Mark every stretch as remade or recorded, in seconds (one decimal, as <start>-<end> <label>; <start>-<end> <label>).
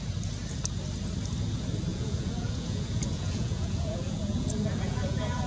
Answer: 0.0-1.9 recorded; 1.9-5.5 remade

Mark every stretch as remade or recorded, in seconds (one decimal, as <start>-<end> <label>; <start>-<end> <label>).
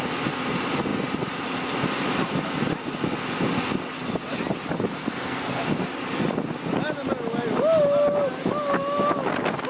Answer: 0.0-5.0 recorded; 5.0-5.7 remade; 5.7-9.7 recorded